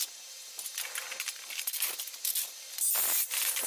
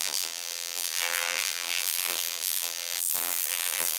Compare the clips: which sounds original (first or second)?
first